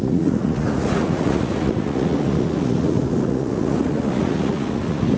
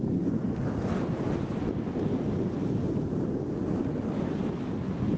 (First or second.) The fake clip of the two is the first